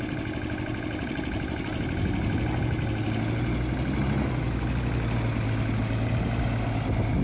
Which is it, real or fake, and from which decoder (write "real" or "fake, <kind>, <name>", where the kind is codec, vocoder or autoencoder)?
real